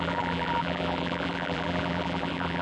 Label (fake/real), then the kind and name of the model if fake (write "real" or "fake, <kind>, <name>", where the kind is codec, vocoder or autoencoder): fake, vocoder, BigVGAN v2